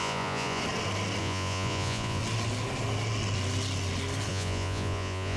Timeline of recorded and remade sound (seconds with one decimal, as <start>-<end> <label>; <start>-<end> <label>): 0.0-0.6 remade; 0.6-1.2 recorded; 1.2-2.2 remade; 2.2-4.3 recorded; 4.3-5.4 remade